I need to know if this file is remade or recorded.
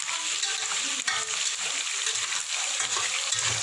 recorded